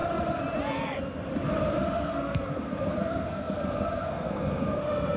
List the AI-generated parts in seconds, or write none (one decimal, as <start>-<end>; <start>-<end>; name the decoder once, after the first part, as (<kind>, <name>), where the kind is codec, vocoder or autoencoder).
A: 1.9-5.2 (codec, SNAC)